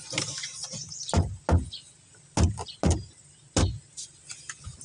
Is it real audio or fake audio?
real